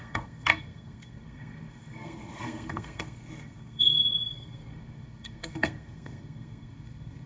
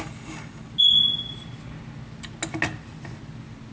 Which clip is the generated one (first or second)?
first